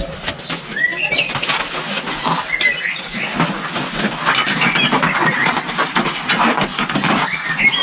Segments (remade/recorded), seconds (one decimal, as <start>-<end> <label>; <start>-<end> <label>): 0.0-7.8 recorded